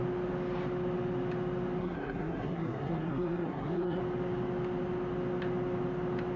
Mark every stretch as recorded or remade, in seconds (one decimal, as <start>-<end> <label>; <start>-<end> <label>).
0.0-1.8 recorded; 1.8-4.0 remade; 4.0-6.4 recorded